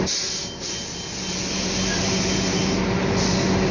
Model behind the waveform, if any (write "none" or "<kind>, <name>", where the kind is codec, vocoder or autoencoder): none